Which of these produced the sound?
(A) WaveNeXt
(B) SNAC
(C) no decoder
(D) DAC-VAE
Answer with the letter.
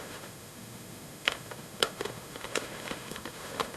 D